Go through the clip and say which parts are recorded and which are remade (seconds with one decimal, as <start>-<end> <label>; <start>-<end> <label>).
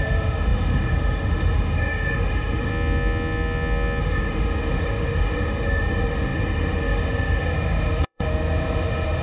0.0-2.7 remade; 2.7-4.0 recorded; 4.0-9.2 remade